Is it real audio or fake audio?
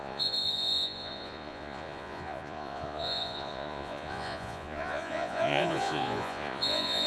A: fake